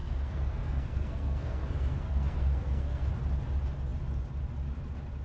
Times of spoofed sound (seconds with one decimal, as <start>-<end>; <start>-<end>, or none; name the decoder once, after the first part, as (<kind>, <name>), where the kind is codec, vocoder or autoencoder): 0.0-3.1 (codec, SNAC)

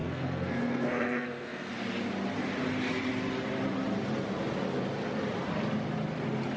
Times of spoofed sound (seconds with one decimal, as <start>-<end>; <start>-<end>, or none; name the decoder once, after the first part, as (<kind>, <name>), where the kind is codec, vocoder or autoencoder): 0.0-1.7 (codec, SNAC)

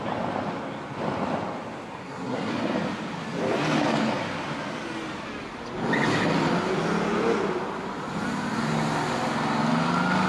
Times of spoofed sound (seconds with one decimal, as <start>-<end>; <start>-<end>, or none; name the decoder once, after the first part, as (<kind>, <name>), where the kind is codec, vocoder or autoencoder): 2.0-2.5 (codec, SNAC)

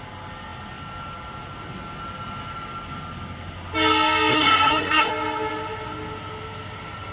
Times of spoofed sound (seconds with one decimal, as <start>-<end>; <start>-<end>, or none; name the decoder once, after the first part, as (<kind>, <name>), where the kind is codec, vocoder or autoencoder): 4.3-5.1 (codec, SNAC)

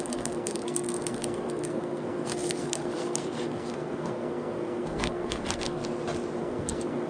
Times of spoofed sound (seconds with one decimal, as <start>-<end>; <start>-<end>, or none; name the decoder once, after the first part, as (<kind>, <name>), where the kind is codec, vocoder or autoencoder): 0.0-5.8 (codec, SNAC); 6.4-7.1